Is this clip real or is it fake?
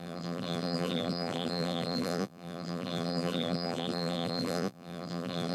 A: fake